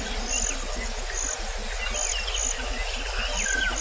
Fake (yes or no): no